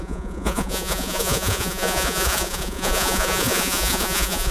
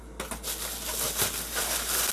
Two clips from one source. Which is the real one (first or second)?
second